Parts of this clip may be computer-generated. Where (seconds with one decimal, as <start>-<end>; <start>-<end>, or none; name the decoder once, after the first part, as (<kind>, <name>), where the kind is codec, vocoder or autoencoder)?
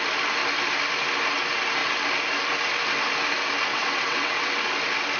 3.7-4.5 (vocoder, WaveNeXt)